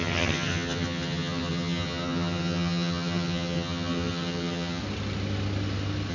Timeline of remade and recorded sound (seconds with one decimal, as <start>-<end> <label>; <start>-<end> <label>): 0.0-4.8 remade; 4.8-6.1 recorded